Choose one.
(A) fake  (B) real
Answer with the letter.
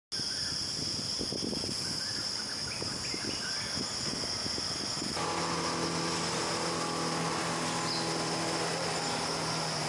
B